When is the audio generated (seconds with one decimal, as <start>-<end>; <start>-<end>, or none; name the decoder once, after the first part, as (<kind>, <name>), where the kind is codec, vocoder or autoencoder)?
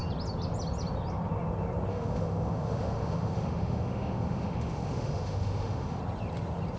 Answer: 1.9-6.0 (autoencoder, DAC-VAE)